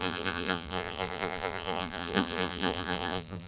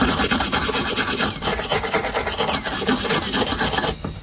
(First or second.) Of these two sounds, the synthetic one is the first